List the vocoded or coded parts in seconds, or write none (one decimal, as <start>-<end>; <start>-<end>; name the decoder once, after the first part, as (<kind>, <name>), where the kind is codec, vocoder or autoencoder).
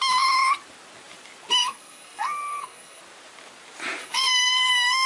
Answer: 1.6-3.0 (codec, SNAC); 4.0-5.1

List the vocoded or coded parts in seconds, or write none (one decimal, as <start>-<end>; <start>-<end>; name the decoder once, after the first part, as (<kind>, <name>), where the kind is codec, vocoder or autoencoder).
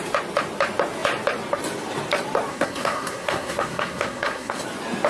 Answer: 2.5-4.6 (codec, SNAC)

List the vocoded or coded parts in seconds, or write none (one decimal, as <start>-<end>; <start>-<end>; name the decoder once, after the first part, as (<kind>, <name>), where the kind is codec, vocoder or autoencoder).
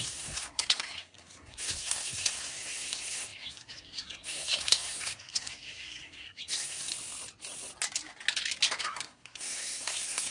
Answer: 0.0-6.9 (codec, SNAC); 8.8-10.3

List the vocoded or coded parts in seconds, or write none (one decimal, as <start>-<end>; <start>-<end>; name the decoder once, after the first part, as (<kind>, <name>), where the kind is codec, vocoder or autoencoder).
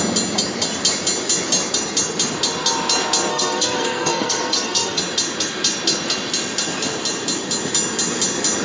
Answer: 3.3-5.0 (codec, SNAC)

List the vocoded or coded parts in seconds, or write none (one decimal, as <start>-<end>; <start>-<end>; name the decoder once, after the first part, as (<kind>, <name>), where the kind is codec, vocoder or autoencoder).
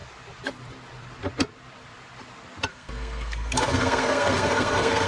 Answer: 2.7-5.1 (codec, SNAC)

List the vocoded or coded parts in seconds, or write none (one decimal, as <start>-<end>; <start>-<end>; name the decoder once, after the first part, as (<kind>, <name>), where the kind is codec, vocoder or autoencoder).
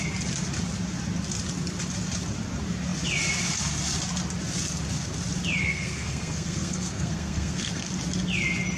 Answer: 5.6-7.9 (codec, SNAC)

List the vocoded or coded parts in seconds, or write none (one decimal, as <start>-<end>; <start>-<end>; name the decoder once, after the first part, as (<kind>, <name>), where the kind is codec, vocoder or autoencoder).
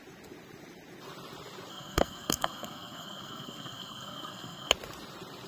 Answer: 1.7-4.7 (codec, SNAC)